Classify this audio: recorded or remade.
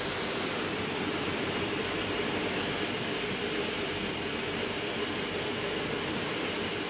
remade